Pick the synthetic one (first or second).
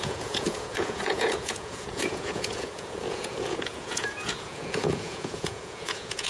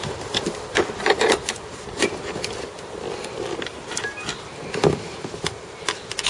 first